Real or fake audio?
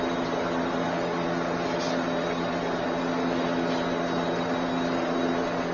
real